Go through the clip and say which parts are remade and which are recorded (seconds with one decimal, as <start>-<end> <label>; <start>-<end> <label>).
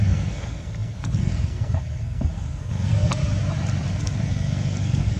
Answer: 0.0-3.2 remade; 3.2-3.9 recorded; 3.9-5.2 remade